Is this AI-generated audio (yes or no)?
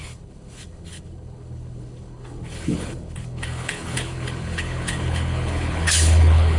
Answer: yes